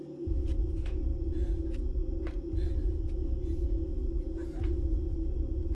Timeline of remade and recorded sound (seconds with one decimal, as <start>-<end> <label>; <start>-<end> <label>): 0.0-5.7 recorded